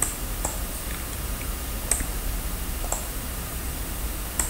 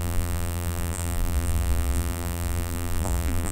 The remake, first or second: second